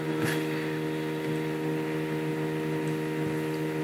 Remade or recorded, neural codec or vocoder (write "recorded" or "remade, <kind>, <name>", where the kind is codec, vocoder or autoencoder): recorded